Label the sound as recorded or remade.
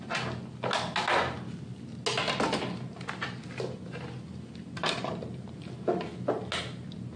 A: recorded